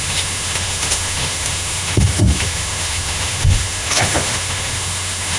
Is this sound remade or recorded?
remade